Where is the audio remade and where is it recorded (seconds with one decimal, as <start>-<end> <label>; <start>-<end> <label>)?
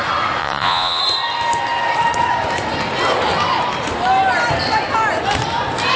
0.0-0.4 recorded; 0.4-1.0 remade; 1.0-6.0 recorded